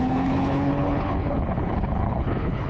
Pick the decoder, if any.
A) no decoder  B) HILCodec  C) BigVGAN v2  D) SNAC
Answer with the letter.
B